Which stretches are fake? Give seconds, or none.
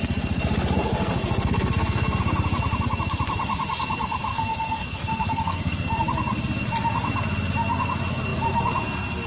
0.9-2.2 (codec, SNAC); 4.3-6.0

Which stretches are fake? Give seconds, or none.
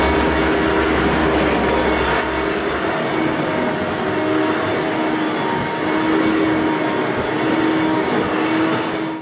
none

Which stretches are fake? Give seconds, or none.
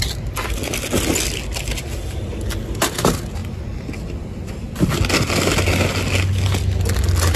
none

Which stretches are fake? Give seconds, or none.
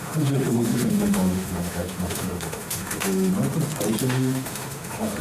0.0-3.3 (autoencoder, DAC-VAE); 4.0-5.2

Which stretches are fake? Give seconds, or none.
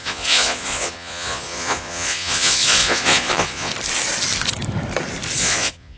0.0-3.7 (vocoder, Vocos); 5.4-6.0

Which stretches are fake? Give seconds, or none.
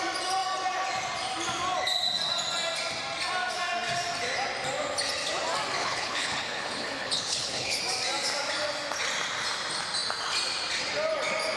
5.8-7.8 (codec, HILCodec)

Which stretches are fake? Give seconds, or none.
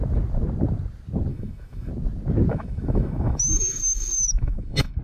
1.3-1.9 (autoencoder, DAC-VAE); 2.5-5.0